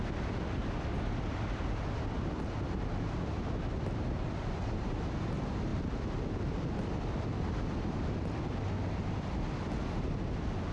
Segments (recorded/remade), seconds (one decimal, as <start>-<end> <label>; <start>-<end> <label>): 0.0-10.7 recorded